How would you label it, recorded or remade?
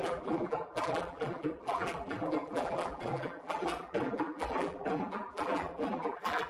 remade